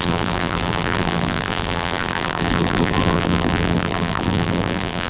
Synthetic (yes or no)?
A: yes